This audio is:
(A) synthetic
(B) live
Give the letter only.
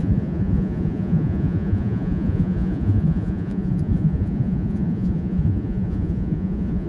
A